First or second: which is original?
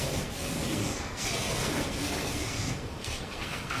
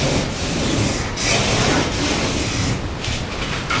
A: second